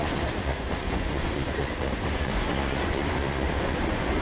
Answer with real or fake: fake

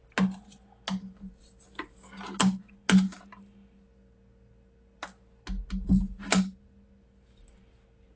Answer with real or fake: real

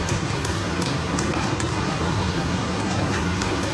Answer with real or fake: fake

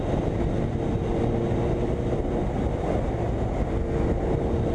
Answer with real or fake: real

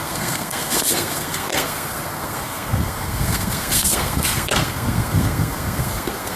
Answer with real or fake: fake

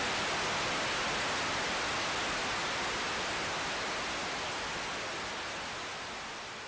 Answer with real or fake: real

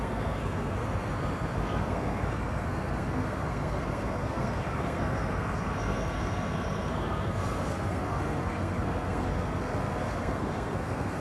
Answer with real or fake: fake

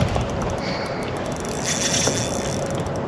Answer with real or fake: real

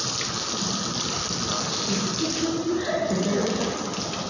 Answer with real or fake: real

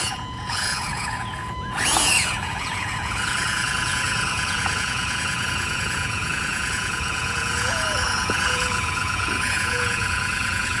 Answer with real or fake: fake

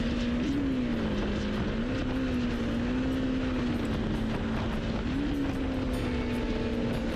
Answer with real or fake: real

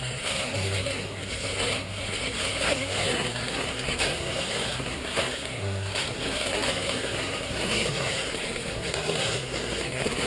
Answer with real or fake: fake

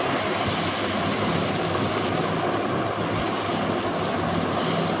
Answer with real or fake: real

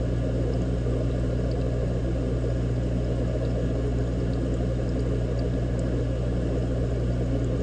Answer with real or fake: real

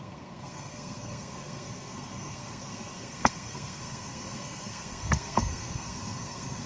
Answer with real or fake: fake